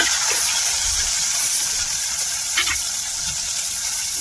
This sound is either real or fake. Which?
fake